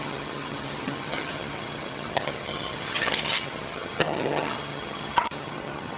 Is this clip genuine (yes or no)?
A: no